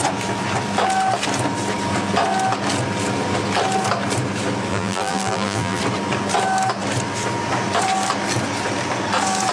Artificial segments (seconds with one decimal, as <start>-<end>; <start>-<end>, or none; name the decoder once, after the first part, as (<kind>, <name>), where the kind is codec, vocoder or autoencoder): 4.7-5.8 (vocoder, BigVGAN v2)